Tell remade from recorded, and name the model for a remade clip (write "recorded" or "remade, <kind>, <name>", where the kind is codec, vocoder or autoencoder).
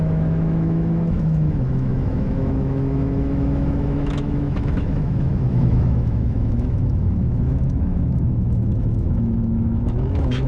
remade, autoencoder, DAC-VAE